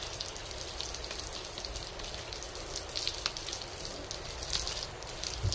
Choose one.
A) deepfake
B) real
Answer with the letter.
B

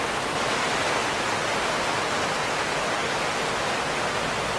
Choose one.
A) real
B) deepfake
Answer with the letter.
A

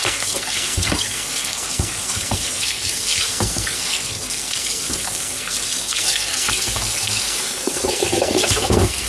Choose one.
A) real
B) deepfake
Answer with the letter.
B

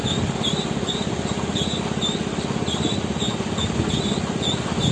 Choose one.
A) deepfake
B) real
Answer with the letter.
B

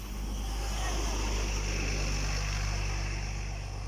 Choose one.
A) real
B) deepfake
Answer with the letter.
A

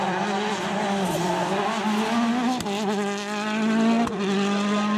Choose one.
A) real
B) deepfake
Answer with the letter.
A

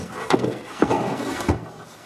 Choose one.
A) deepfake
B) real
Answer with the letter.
A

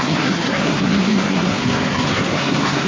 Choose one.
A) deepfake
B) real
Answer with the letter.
A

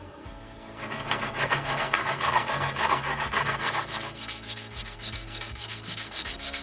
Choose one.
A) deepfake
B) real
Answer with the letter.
A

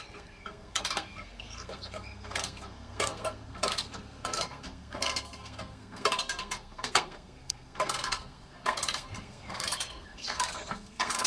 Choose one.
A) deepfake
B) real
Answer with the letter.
A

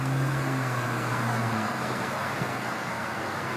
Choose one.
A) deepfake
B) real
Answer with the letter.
A